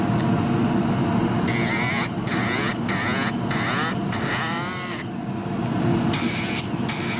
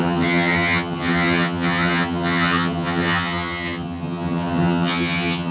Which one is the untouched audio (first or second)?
first